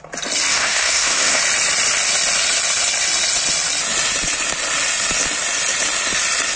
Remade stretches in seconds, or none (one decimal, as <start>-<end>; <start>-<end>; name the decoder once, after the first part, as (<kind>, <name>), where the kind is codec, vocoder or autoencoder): 0.5-1.4 (codec, SNAC)

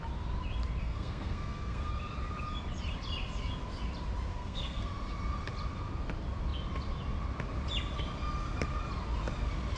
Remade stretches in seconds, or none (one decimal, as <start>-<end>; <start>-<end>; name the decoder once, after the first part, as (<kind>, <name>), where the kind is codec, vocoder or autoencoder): 0.8-1.9 (codec, SNAC); 4.3-4.9